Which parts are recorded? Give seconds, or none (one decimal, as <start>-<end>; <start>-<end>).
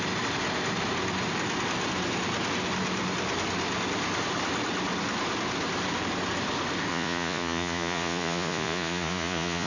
0.0-6.9